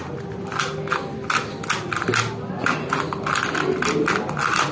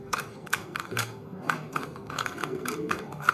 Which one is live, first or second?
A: first